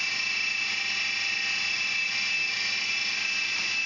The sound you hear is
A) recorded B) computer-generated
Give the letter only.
A